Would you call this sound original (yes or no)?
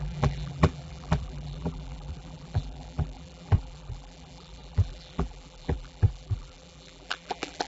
no